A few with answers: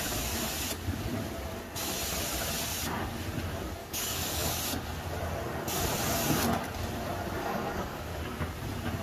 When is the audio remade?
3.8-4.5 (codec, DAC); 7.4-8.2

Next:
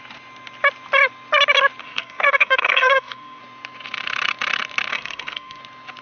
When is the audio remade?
1.8-3.4 (codec, SNAC); 4.9-5.6

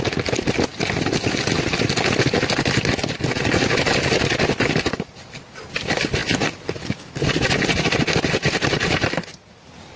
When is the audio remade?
none

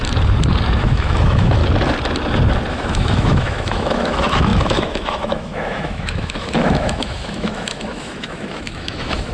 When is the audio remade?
0.8-1.6 (autoencoder, DAC-VAE); 2.7-9.3

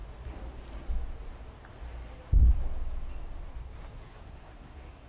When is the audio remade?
3.6-5.1 (codec, SNAC)

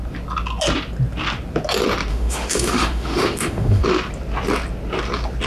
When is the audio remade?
2.1-3.8 (autoencoder, DAC-VAE)